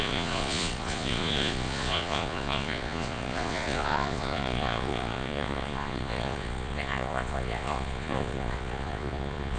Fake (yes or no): yes